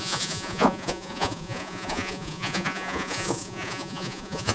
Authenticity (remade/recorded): remade